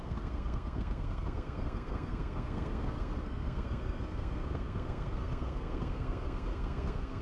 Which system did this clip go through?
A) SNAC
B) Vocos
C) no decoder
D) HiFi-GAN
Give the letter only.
A